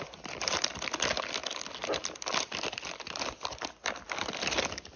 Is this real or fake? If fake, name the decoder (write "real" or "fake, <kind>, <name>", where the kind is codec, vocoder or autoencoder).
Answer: fake, vocoder, BigVGAN v2